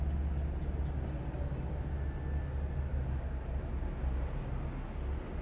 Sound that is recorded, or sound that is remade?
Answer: recorded